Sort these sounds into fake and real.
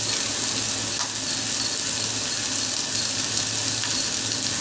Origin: real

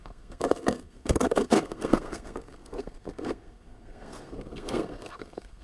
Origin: fake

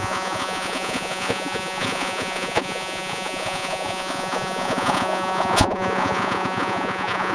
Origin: fake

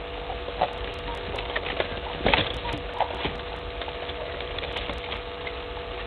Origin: real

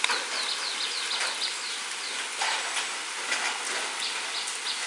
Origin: real